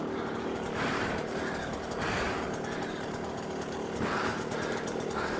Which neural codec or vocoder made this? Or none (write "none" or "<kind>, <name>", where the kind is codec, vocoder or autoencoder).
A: codec, DAC